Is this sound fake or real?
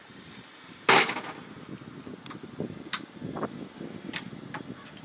real